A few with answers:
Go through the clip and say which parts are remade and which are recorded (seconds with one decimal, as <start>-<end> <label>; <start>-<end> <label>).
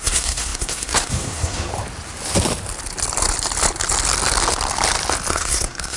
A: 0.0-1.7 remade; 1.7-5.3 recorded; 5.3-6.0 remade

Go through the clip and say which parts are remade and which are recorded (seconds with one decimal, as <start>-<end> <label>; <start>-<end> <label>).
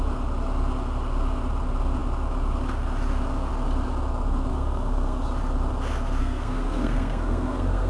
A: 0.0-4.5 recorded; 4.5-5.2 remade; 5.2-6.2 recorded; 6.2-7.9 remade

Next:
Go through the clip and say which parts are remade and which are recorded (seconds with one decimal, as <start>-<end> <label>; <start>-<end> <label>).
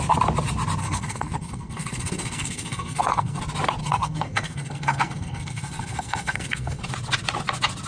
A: 0.0-0.8 recorded; 0.8-3.4 remade; 3.4-3.8 recorded; 3.8-6.8 remade; 6.8-7.9 recorded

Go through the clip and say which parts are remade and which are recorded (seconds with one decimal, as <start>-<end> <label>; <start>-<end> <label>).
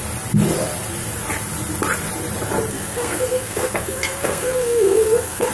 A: 0.0-2.7 recorded; 2.7-5.5 remade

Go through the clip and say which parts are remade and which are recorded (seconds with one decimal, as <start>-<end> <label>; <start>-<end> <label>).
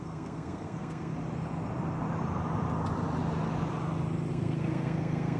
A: 0.0-1.1 remade; 1.1-4.3 recorded; 4.3-5.4 remade